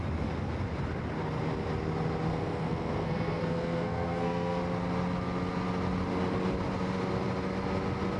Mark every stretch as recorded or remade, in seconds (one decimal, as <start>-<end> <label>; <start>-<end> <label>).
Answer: 0.0-2.3 recorded; 2.3-4.6 remade; 4.6-8.2 recorded